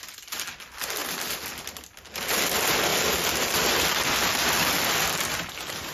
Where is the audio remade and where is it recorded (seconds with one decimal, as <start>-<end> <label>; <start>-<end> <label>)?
0.0-5.9 recorded